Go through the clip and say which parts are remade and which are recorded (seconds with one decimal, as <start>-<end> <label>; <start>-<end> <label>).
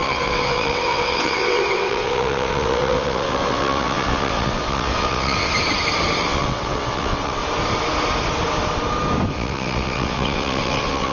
0.0-5.5 remade; 5.5-6.2 recorded; 6.2-7.4 remade; 7.4-9.3 recorded; 9.3-11.1 remade